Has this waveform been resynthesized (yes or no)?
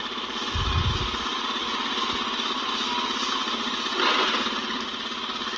no